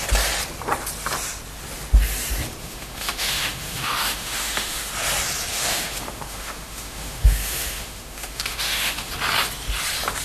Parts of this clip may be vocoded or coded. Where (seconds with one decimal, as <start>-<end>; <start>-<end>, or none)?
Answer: 2.6-4.9; 5.5-9.1